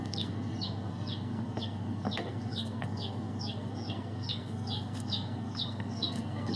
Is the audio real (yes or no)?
no